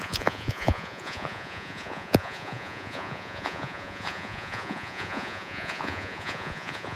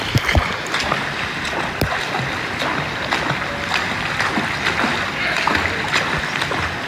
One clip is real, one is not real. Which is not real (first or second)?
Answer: first